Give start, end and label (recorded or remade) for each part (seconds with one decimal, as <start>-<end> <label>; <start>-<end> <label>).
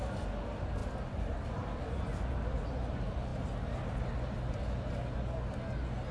0.0-0.8 recorded; 0.8-2.0 remade; 2.0-6.1 recorded